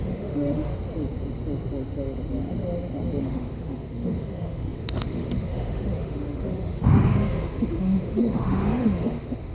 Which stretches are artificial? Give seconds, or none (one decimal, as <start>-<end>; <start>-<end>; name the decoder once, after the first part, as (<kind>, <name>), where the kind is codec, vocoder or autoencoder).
0.0-0.7 (autoencoder, DAC-VAE); 3.2-9.5

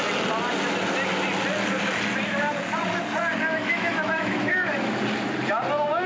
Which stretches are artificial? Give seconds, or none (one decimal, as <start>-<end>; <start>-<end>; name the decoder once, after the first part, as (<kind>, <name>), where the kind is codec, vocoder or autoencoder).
3.6-5.0 (autoencoder, DAC-VAE)

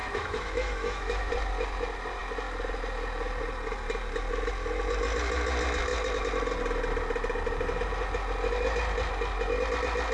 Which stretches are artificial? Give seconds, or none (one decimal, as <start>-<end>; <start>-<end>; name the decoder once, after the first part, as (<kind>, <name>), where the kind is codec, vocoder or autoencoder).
0.0-1.3 (autoencoder, DAC-VAE)

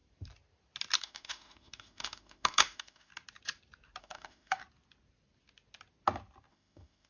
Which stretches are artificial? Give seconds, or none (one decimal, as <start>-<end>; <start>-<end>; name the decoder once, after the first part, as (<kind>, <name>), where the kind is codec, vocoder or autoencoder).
1.0-3.1 (autoencoder, DAC-VAE); 4.0-4.6; 6.5-7.1